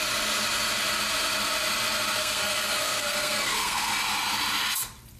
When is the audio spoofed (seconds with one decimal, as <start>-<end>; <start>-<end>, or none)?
2.2-3.9